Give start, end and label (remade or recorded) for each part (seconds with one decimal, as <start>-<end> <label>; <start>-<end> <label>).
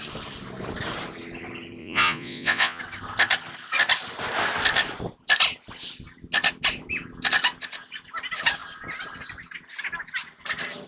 0.0-1.8 recorded; 1.8-2.8 remade; 2.8-10.9 recorded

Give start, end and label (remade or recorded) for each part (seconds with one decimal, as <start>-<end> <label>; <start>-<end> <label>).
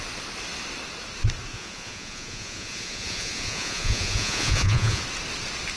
0.0-1.5 recorded; 1.5-5.0 remade; 5.0-5.8 recorded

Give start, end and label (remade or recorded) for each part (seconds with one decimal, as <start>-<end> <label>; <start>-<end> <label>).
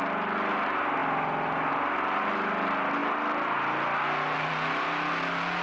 0.0-5.6 recorded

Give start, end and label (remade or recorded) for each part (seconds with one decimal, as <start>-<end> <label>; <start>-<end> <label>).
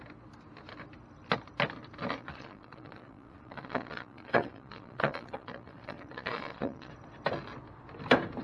0.0-2.2 recorded; 2.2-6.9 remade; 6.9-8.4 recorded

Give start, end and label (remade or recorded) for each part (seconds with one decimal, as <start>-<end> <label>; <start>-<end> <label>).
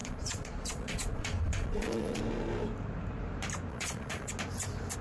0.0-2.2 remade; 2.2-3.7 recorded; 3.7-4.3 remade; 4.3-5.0 recorded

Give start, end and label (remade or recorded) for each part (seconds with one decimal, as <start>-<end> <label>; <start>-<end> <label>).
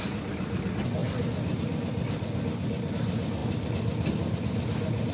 0.0-5.1 recorded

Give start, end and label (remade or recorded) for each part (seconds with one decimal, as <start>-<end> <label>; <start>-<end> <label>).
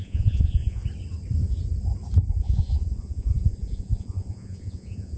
0.0-0.8 remade; 0.8-2.3 recorded; 2.3-5.2 remade